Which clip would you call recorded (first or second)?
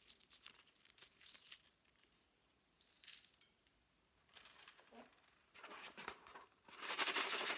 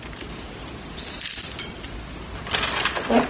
second